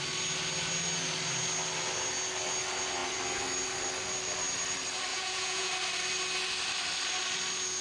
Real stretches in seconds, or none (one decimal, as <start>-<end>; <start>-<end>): 0.0-5.1; 5.7-7.8